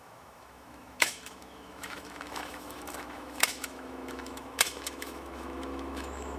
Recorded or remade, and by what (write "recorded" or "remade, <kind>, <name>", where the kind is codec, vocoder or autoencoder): remade, autoencoder, DAC-VAE